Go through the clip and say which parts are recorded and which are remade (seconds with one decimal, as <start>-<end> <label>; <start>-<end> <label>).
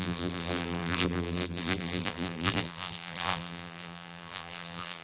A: 0.0-5.0 remade